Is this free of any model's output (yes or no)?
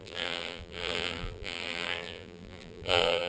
no